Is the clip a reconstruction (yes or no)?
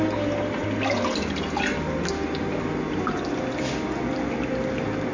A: no